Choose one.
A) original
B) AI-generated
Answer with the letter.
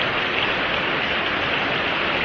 A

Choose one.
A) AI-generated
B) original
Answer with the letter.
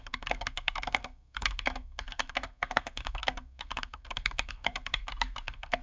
A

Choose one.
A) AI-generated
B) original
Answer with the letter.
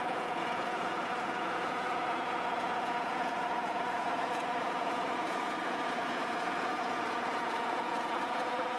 A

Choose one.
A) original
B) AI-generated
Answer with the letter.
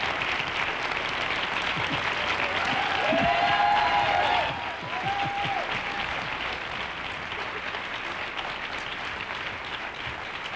A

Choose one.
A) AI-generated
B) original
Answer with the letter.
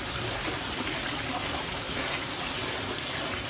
B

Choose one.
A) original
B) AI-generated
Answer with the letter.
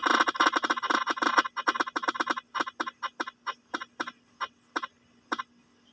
A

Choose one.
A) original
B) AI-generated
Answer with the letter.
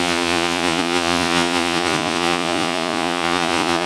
B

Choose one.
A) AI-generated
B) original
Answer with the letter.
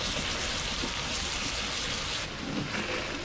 B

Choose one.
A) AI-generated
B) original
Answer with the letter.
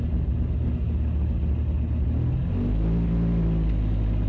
B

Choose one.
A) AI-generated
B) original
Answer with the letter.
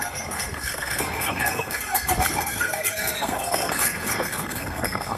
A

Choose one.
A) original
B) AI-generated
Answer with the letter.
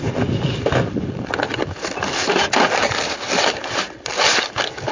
A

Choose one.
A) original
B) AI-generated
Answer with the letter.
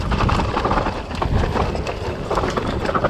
A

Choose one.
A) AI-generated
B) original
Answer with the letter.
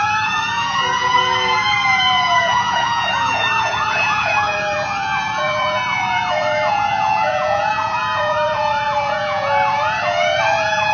A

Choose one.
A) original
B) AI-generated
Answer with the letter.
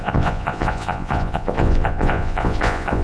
B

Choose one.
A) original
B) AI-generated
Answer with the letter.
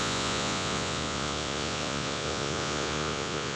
B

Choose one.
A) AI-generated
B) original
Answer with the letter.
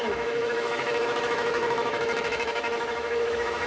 A